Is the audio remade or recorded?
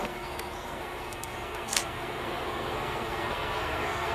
remade